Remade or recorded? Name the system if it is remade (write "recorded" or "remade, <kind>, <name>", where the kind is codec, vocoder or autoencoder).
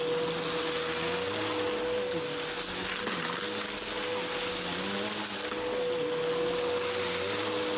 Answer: recorded